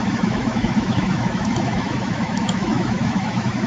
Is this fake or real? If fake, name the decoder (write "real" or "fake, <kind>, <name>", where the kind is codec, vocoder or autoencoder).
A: fake, autoencoder, DAC-VAE